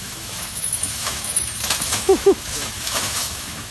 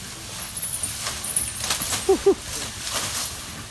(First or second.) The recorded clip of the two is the second